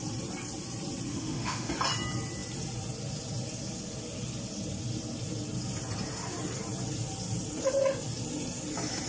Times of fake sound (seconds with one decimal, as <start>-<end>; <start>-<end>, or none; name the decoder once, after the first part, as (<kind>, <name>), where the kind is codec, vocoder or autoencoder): 1.1-1.7 (autoencoder, DAC-VAE)